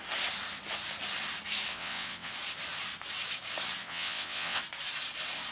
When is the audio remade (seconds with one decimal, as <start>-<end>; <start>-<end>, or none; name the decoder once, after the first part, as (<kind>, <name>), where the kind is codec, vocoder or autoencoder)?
1.7-2.3 (vocoder, WaveNeXt); 3.8-4.6